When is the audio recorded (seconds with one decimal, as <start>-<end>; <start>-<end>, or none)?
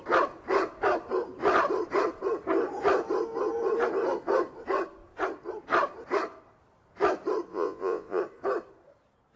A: 0.0-7.5; 8.2-9.4